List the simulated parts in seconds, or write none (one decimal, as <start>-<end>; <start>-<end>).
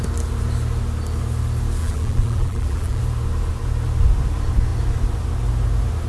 1.8-3.0